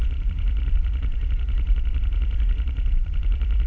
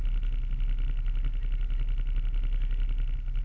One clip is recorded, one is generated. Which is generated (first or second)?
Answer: first